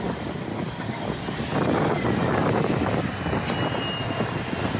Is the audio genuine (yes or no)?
yes